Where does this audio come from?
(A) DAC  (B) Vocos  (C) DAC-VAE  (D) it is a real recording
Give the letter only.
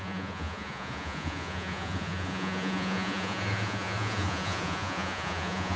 B